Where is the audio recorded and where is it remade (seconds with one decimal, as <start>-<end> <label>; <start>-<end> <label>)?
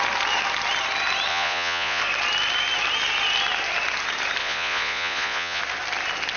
0.0-1.3 recorded; 1.3-2.0 remade; 2.0-4.4 recorded; 4.4-5.6 remade; 5.6-6.4 recorded